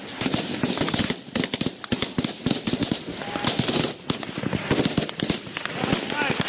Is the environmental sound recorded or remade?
recorded